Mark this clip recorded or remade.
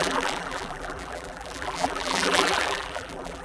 remade